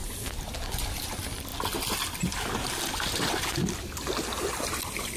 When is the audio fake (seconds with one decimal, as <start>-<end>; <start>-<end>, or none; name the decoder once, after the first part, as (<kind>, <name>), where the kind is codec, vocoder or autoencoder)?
none